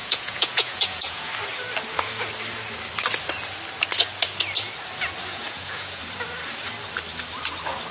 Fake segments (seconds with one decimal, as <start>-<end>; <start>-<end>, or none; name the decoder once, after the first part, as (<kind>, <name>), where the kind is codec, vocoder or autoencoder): 0.0-1.3 (vocoder, Vocos); 5.3-6.0